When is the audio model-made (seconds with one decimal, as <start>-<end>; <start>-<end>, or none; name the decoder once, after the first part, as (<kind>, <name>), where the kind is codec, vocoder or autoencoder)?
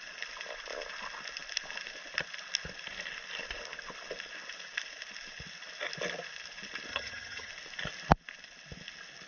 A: 6.9-7.5 (vocoder, HiFi-GAN)